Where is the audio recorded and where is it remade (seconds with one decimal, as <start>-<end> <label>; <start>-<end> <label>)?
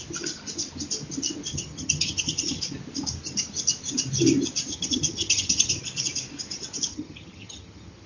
0.0-1.5 recorded; 1.5-2.6 remade; 2.6-4.7 recorded; 4.7-5.8 remade; 5.8-6.9 recorded; 6.9-8.1 remade